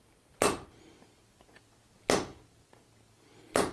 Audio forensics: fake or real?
real